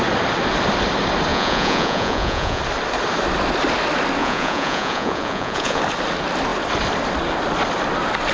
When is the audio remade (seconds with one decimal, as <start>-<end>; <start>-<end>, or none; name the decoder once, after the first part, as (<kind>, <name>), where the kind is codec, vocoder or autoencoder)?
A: 1.3-2.6 (vocoder, Vocos); 4.2-5.8